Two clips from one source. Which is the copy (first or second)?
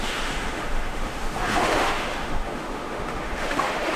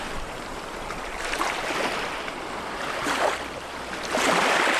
first